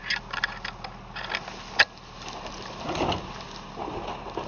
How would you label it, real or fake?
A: real